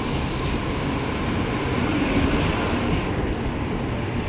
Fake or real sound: real